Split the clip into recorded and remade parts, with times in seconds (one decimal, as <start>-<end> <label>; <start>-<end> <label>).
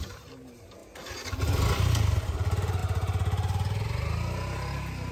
0.0-0.8 remade; 0.8-2.2 recorded; 2.2-2.8 remade; 2.8-5.1 recorded